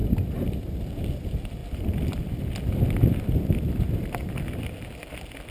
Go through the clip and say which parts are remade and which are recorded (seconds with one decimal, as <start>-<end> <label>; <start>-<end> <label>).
0.0-1.6 recorded; 1.6-4.5 remade; 4.5-5.5 recorded

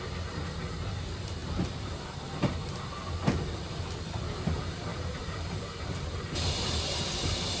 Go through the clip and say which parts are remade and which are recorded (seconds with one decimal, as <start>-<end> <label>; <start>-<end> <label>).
0.0-4.9 recorded; 4.9-7.0 remade; 7.0-7.6 recorded